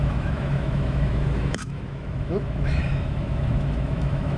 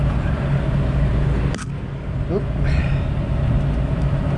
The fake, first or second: first